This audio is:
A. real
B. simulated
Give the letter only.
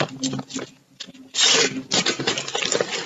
A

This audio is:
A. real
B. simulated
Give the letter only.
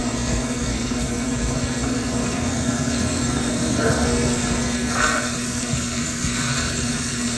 B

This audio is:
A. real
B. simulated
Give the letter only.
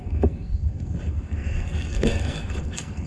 B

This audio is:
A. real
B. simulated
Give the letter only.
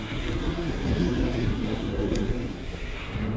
B